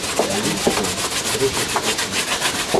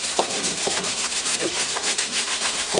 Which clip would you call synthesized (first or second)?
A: second